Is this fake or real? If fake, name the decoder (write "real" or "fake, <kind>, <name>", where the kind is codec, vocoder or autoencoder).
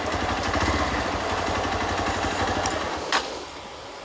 real